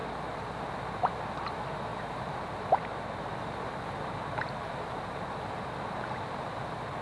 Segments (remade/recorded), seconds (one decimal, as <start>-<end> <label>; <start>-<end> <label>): 0.0-1.9 recorded; 1.9-5.4 remade; 5.4-7.0 recorded

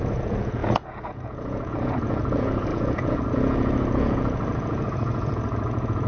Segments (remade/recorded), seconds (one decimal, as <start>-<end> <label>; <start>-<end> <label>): 0.0-6.1 remade

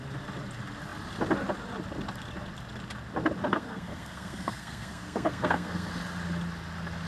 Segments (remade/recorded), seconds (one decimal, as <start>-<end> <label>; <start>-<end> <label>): 0.0-3.5 recorded; 3.5-5.9 remade; 5.9-7.1 recorded